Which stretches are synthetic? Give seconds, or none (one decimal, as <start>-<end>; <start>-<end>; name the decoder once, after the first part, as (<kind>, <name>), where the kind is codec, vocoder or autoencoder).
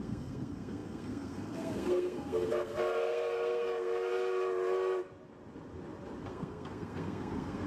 0.0-4.1 (codec, SNAC); 6.2-7.7